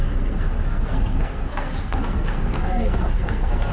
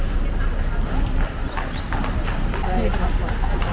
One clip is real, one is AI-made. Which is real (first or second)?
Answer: second